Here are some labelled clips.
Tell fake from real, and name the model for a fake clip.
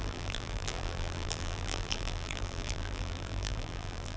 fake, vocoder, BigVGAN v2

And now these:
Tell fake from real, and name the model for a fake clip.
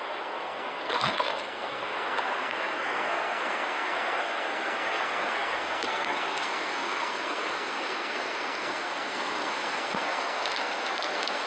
fake, codec, SNAC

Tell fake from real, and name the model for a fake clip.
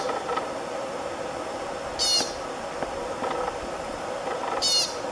real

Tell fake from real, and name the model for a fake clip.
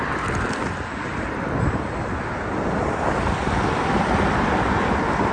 real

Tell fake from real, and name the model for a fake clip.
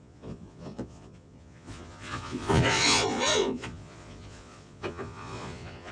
fake, vocoder, Vocos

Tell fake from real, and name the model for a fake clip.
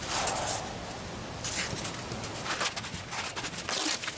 real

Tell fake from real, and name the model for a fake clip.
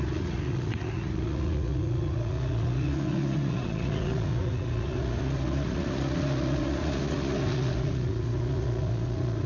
fake, vocoder, Vocos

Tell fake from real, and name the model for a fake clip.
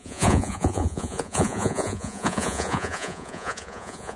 fake, vocoder, Vocos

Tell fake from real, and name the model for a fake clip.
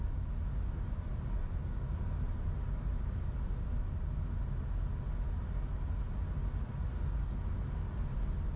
real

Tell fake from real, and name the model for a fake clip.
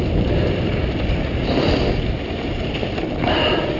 real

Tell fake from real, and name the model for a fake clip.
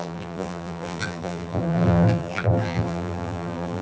fake, vocoder, BigVGAN v2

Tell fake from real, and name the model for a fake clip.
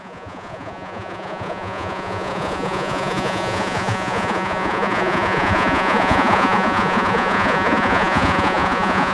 fake, vocoder, Vocos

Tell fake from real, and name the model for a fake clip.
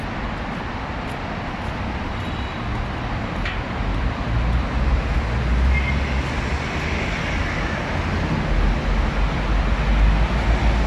real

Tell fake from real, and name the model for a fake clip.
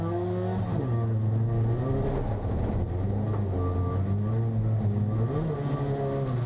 real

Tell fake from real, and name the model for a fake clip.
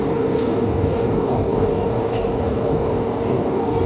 fake, codec, DAC